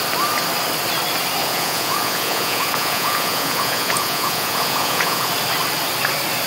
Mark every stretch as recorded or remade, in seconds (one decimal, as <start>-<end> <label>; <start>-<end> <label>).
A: 0.0-1.4 recorded; 1.4-5.3 remade; 5.3-6.5 recorded